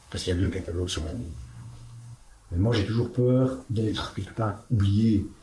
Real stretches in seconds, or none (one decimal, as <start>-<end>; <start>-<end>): 2.3-3.9; 4.8-5.4